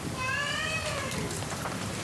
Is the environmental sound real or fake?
fake